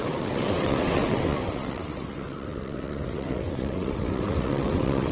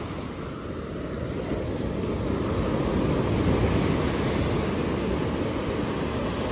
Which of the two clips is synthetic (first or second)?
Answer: first